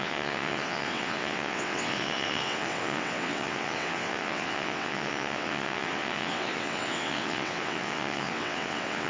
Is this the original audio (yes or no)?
no